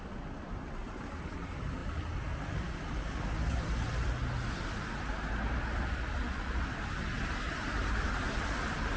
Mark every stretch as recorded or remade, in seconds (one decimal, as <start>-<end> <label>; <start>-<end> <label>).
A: 0.0-9.0 recorded